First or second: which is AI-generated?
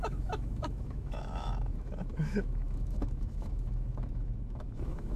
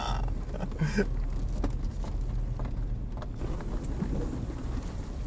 first